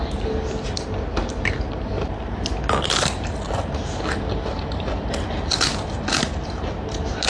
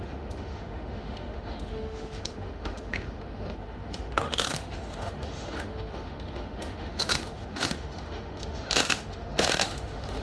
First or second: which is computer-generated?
second